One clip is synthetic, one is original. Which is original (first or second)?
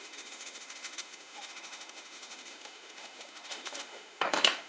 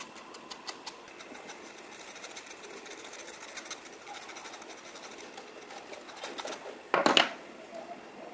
second